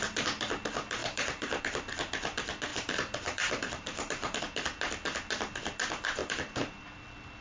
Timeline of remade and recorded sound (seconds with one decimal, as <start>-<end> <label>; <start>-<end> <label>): 0.0-1.0 recorded; 1.0-1.6 remade; 1.6-2.7 recorded; 2.7-4.4 remade; 4.4-6.2 recorded; 6.2-6.8 remade; 6.8-7.4 recorded